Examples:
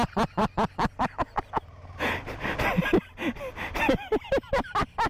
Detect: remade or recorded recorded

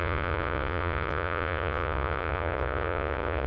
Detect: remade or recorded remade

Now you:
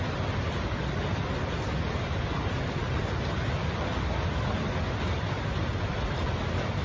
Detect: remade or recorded recorded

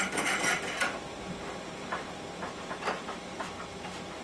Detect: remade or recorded remade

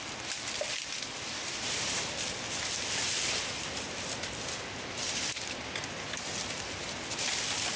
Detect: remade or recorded recorded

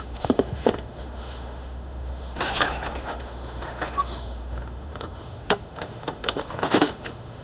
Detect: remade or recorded remade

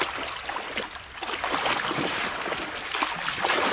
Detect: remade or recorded recorded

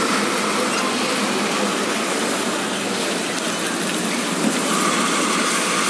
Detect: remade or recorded recorded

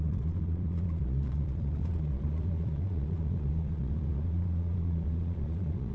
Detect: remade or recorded remade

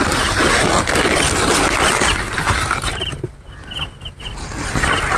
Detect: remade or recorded recorded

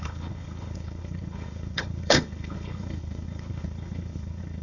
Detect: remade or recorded remade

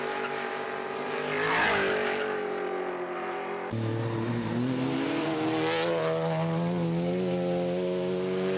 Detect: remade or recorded recorded